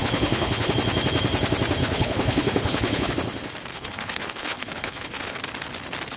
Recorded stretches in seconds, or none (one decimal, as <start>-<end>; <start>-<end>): 0.7-1.8; 3.1-3.7; 5.4-6.2